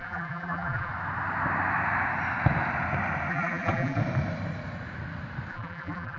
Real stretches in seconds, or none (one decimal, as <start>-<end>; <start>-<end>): 0.9-3.3; 4.0-5.5